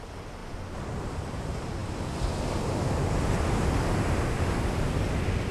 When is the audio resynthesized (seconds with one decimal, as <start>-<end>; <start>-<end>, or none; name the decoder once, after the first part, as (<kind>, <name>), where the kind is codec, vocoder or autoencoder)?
none